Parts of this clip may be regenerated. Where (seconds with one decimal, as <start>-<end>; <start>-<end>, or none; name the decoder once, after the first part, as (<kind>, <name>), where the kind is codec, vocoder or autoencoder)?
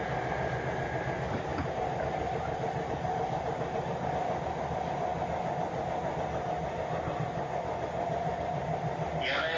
1.5-4.1 (vocoder, BigVGAN v2)